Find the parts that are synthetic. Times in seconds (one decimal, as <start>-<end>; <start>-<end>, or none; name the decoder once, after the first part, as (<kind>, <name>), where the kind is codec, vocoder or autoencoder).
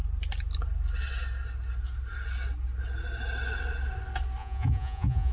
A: 4.4-5.3 (vocoder, Vocos)